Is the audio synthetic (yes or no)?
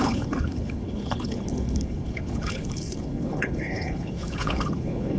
yes